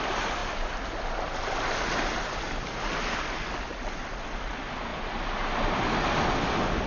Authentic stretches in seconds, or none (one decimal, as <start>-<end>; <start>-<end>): 0.0-6.9